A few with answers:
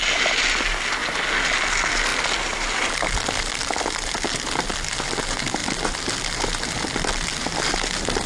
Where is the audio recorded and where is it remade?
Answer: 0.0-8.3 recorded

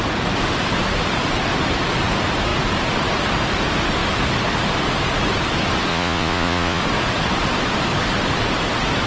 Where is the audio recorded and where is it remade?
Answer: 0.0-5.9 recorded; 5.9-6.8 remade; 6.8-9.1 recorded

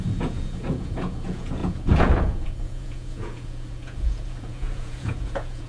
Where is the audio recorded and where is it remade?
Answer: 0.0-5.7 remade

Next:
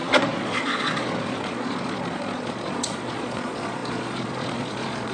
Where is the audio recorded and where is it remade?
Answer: 0.0-5.1 remade